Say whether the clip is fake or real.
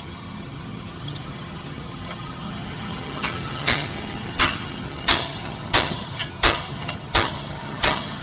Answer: fake